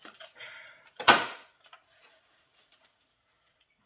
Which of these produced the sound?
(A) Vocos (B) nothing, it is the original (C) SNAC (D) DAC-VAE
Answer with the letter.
A